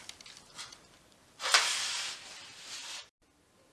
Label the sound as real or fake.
real